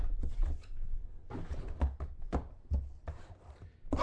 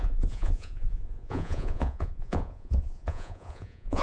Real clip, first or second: first